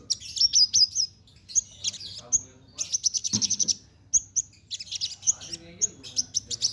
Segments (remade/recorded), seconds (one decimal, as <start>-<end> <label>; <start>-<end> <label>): 0.0-6.7 recorded